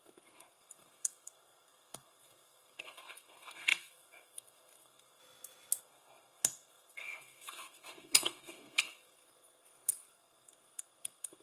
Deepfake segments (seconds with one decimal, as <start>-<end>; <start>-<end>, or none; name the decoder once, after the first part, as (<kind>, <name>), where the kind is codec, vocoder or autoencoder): 0.0-5.2 (codec, SNAC); 5.8-11.4